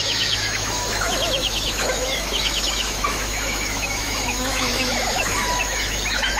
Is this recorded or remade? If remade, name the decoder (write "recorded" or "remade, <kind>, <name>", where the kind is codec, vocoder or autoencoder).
remade, autoencoder, DAC-VAE